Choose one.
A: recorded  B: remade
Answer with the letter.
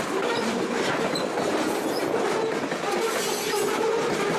A